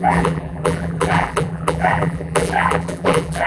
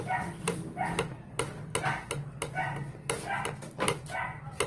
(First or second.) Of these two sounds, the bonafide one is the second